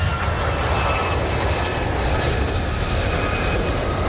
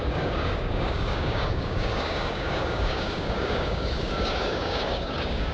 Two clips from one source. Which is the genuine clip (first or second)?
first